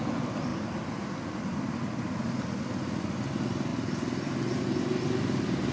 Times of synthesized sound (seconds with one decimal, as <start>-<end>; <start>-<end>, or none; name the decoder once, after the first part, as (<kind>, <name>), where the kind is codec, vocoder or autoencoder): none